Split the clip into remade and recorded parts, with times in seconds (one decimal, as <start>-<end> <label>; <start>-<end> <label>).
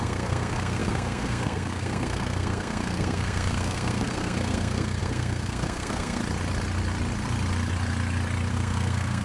0.0-6.2 remade; 6.2-8.5 recorded; 8.5-9.2 remade